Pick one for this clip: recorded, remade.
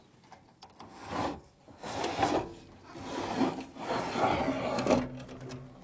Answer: recorded